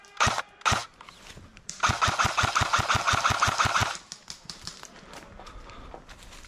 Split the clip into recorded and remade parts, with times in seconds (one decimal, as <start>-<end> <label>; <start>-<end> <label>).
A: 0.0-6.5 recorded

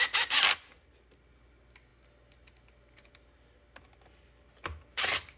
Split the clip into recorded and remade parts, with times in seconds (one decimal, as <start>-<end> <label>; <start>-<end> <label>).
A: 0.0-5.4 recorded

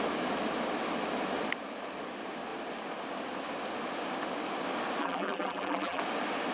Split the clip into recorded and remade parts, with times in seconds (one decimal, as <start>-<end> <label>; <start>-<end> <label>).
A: 0.0-5.0 recorded; 5.0-6.0 remade; 6.0-6.5 recorded